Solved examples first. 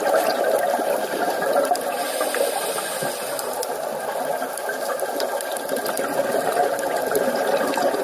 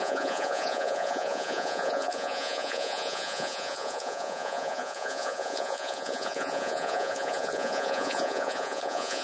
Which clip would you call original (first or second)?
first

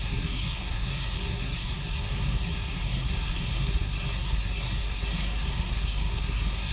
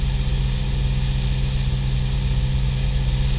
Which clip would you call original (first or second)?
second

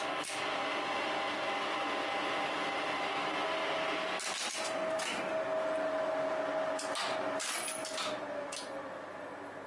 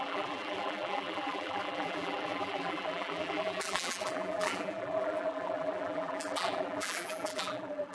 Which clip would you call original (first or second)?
first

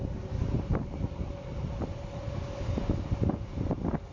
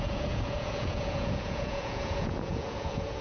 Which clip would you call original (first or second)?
first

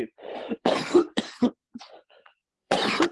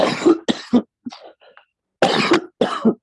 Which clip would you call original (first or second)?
second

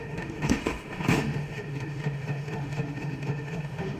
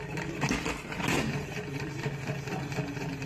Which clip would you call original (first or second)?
second